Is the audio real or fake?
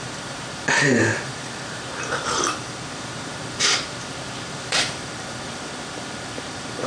fake